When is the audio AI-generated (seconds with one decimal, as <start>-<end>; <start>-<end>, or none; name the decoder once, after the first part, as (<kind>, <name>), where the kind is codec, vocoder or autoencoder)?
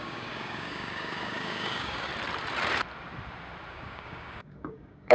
0.0-2.1 (codec, DAC); 3.7-5.1